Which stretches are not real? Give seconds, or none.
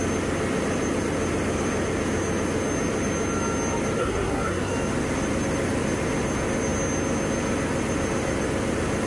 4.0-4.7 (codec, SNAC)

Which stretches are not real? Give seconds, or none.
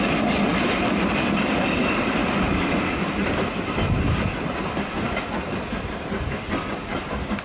0.5-1.7 (vocoder, BigVGAN v2)